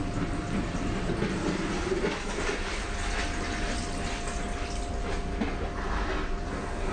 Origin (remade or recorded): recorded